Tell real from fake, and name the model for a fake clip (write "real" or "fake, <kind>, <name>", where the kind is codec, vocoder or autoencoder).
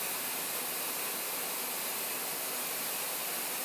real